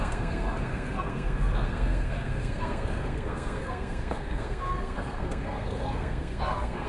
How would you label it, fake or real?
fake